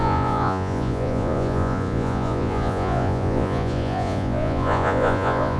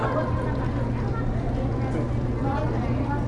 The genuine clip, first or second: second